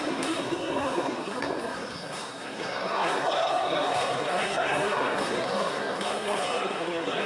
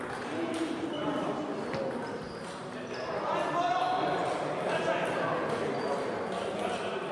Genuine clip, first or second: second